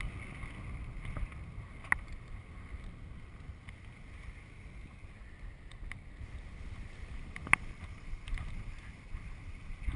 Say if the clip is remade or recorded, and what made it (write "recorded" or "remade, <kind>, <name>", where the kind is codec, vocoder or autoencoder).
recorded